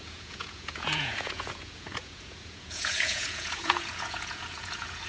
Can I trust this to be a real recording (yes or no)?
no